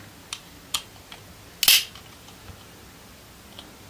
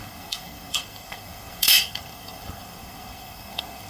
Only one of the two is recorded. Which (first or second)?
first